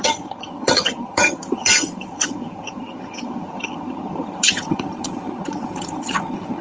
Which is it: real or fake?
fake